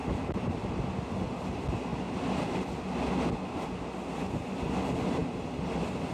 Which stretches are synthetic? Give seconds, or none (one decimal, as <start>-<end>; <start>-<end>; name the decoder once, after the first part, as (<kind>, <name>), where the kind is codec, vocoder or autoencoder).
none